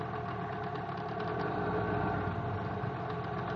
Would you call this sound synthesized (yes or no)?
no